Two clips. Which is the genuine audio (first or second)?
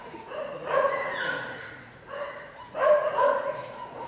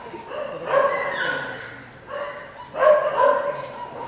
second